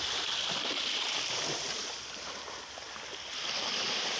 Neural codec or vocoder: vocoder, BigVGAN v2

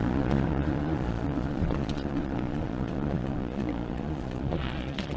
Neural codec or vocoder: vocoder, Vocos